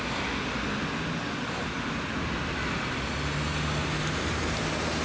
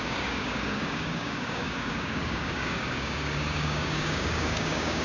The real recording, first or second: first